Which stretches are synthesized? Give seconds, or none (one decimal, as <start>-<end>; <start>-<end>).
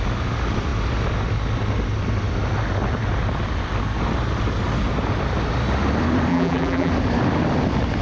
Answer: 6.3-6.9